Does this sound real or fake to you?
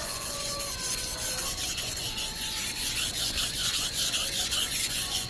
fake